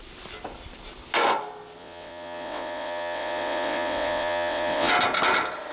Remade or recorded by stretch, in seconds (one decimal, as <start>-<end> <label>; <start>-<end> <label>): 0.0-1.8 recorded; 1.8-4.9 remade; 4.9-5.7 recorded